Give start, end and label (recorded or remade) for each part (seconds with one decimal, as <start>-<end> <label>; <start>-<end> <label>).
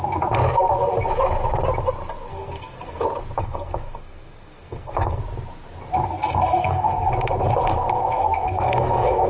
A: 0.0-2.3 recorded; 2.3-3.0 remade; 3.0-3.4 recorded; 3.4-5.2 remade; 5.2-6.6 recorded; 6.6-7.1 remade; 7.1-7.7 recorded; 7.7-9.3 remade